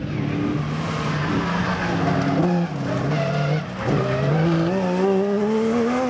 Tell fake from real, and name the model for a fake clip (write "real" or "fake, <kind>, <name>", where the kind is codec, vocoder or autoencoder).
real